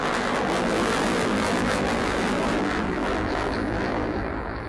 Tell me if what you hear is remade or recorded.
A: remade